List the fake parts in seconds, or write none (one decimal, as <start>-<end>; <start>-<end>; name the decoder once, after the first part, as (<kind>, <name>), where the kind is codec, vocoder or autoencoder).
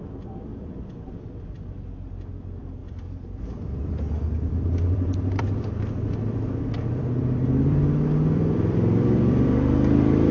0.0-0.5 (vocoder, BigVGAN v2); 2.3-10.3